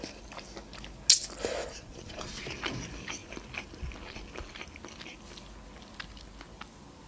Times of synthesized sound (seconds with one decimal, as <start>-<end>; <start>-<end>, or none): 1.6-2.4